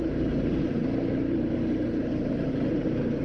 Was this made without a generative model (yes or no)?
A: no